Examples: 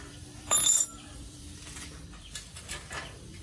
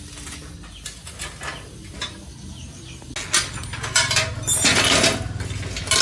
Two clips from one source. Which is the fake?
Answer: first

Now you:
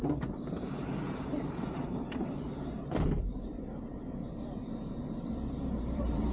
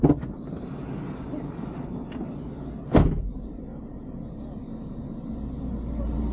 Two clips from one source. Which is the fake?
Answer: first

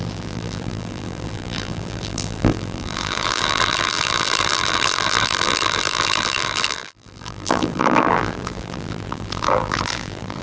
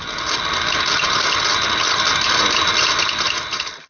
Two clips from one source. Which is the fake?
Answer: first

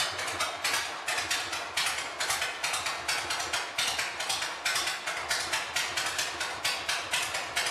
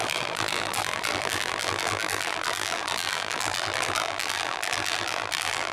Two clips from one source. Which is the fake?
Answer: second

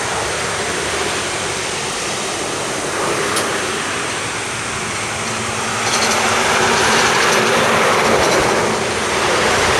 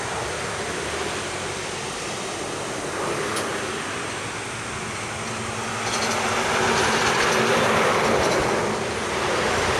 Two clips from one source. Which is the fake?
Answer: first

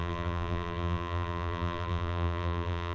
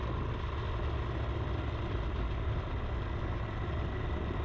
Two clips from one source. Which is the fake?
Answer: first